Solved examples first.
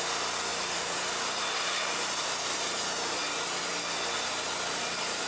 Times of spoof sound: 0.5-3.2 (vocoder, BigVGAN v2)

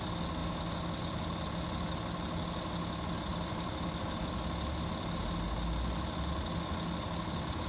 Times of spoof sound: 3.3-4.3 (vocoder, BigVGAN v2)